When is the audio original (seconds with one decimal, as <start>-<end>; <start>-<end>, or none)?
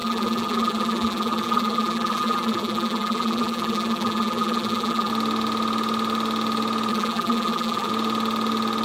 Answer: 5.1-6.9; 7.9-8.8